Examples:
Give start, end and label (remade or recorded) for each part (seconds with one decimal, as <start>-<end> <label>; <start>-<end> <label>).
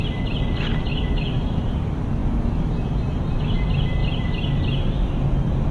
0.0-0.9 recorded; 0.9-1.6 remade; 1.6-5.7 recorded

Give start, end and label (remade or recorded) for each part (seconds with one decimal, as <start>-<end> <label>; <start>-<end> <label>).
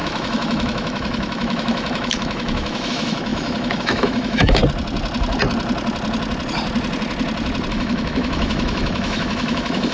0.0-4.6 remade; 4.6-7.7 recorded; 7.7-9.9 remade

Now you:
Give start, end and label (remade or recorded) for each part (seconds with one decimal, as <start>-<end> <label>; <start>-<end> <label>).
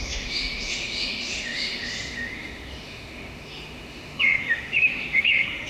0.0-5.7 remade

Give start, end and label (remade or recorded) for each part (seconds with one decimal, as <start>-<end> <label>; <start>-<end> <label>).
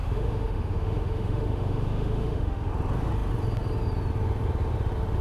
0.0-2.7 remade; 2.7-5.2 recorded